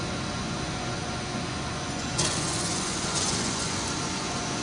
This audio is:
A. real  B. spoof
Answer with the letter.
B